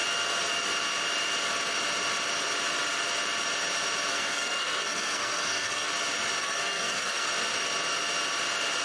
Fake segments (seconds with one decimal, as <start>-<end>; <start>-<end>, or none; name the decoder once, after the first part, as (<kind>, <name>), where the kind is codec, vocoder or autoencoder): 4.1-5.9 (codec, SNAC); 6.4-7.3